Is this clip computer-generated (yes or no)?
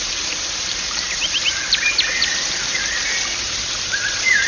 yes